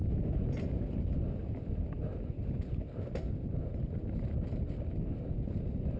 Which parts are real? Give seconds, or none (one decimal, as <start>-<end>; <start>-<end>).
0.0-6.0